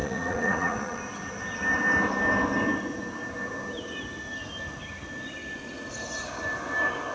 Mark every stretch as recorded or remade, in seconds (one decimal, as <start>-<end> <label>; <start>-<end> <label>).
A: 0.0-1.0 remade; 1.0-7.1 recorded